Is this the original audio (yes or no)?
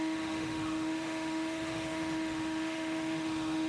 no